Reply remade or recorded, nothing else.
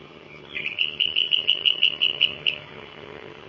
remade